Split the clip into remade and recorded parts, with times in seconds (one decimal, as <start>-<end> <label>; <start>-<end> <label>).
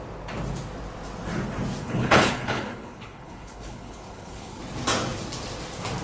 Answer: 0.0-1.8 recorded; 1.8-4.6 remade; 4.6-6.0 recorded